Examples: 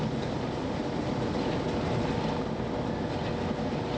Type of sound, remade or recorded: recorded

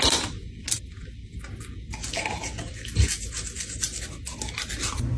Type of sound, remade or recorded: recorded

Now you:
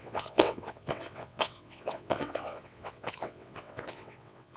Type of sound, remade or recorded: remade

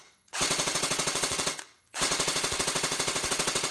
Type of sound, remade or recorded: remade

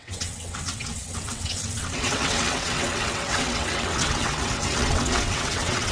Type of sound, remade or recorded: remade